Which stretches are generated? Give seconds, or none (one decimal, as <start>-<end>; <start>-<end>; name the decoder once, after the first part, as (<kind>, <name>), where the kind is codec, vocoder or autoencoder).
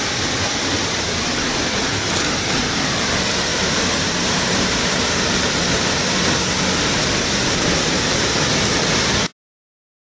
3.5-5.5 (vocoder, BigVGAN v2)